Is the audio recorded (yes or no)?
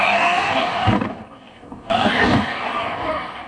no